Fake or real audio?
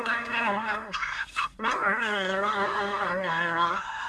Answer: fake